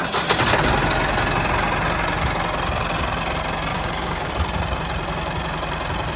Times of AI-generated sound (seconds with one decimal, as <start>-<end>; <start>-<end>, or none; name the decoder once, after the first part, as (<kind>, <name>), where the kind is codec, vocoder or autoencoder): 3.7-4.3 (codec, DAC)